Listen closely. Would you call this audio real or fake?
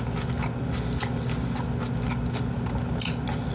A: real